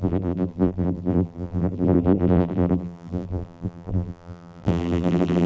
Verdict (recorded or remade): remade